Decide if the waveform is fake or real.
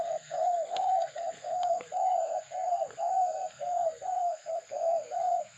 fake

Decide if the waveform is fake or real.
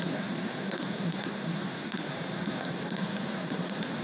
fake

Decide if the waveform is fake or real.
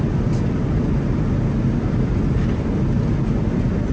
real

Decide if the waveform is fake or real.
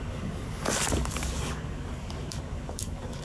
fake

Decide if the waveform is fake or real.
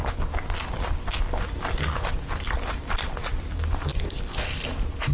real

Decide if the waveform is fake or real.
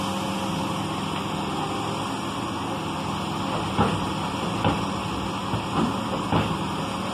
real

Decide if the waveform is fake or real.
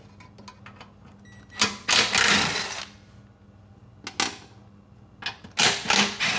real